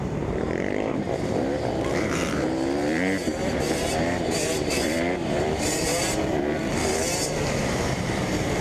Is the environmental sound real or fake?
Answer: fake